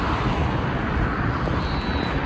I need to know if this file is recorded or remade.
recorded